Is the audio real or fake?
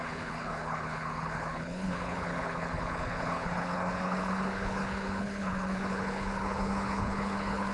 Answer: fake